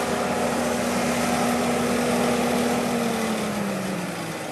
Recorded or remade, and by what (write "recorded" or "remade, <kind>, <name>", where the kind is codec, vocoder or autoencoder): recorded